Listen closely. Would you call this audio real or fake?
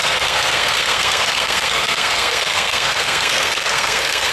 fake